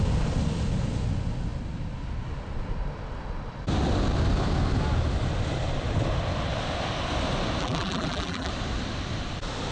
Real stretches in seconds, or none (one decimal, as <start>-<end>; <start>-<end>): 0.0-7.6; 8.5-9.7

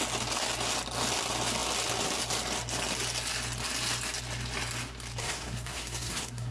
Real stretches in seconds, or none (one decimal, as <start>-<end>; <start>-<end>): 0.0-5.2

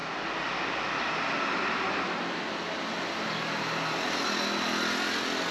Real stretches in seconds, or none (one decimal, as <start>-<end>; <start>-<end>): 0.0-5.5

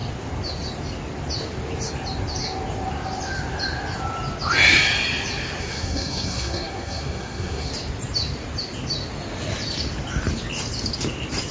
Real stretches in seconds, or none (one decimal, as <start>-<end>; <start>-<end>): 0.0-5.6; 7.7-11.5

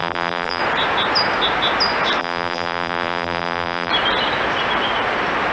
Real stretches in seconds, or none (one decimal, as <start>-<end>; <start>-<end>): 0.6-2.2; 3.9-5.5

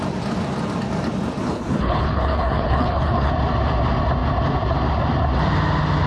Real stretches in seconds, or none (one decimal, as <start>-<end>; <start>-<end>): 0.0-1.4; 3.3-6.1

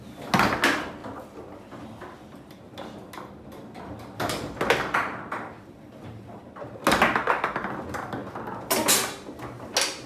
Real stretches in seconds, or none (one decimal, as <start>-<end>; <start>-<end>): 0.0-1.0; 2.7-4.9; 6.4-10.1